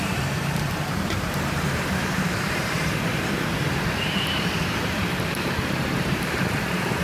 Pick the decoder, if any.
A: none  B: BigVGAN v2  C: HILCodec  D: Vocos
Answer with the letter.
B